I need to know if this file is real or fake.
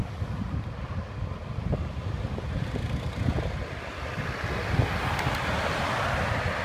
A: real